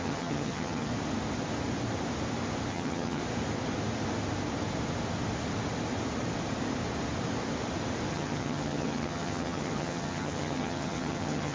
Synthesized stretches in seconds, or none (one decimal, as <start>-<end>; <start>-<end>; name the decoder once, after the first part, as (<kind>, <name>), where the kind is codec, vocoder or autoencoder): 0.0-0.9 (vocoder, HiFi-GAN); 2.7-3.2; 8.1-11.5